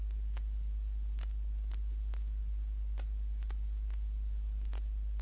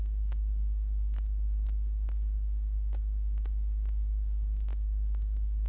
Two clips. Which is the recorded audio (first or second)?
first